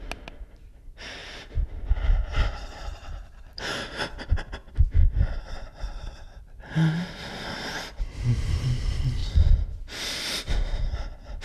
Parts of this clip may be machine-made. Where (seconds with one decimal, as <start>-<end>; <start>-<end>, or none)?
1.2-6.4; 9.2-9.8